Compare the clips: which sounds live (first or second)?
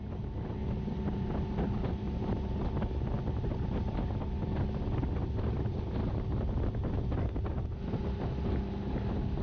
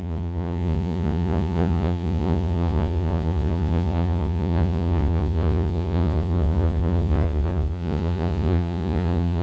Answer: first